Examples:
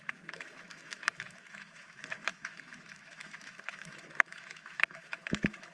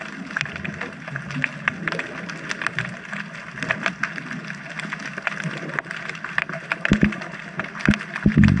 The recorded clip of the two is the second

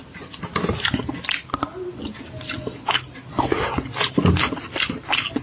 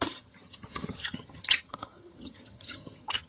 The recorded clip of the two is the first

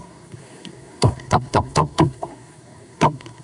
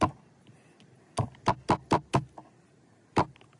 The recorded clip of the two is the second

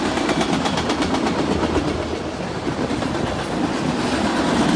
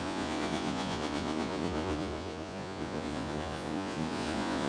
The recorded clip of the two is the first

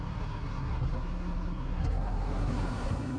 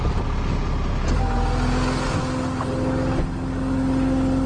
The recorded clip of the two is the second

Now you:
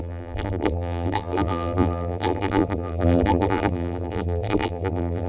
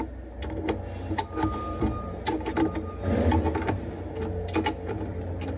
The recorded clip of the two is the second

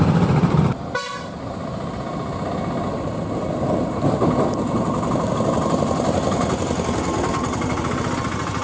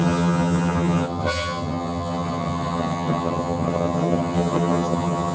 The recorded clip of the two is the first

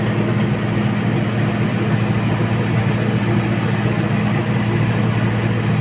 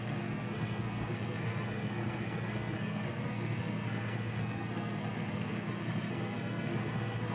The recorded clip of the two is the first